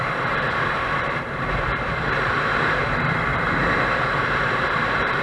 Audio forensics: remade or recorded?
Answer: remade